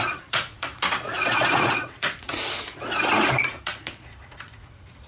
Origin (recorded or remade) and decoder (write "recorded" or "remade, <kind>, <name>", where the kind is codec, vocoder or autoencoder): remade, vocoder, Vocos